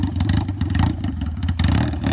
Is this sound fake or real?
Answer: fake